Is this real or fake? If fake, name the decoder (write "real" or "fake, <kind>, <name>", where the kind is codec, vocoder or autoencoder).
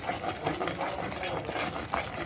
real